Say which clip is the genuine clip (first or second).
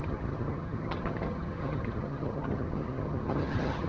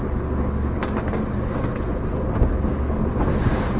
second